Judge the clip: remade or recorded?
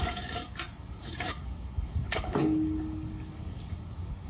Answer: remade